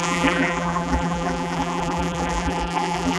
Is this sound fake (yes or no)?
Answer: yes